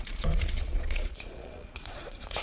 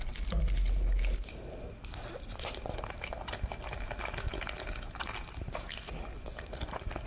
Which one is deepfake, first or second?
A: first